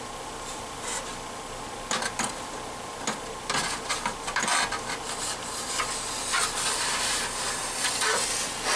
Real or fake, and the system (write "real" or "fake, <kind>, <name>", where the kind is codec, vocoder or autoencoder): real